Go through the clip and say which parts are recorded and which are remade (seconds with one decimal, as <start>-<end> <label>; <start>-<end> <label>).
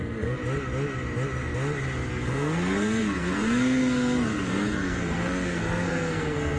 0.0-0.4 remade; 0.4-2.1 recorded; 2.1-6.6 remade